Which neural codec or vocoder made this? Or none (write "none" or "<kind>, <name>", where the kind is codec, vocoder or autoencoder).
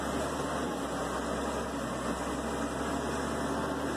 none